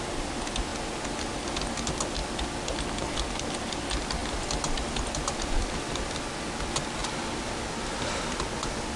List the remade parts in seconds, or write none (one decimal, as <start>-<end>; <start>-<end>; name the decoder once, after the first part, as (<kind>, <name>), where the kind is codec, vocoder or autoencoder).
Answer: 4.2-6.2 (vocoder, BigVGAN v2); 7.0-8.1